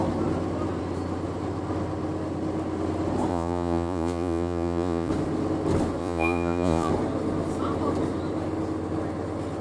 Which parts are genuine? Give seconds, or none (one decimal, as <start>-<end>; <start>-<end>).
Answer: 0.0-3.3; 5.1-6.0; 6.9-9.6